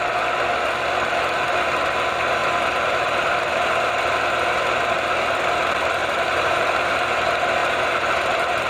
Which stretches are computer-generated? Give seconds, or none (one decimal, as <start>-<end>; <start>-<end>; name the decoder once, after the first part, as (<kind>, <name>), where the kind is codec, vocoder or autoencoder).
2.4-3.3 (vocoder, BigVGAN v2); 6.0-6.6; 7.6-8.1